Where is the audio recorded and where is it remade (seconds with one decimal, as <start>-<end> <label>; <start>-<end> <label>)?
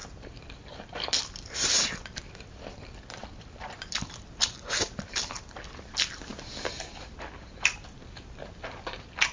0.0-9.3 remade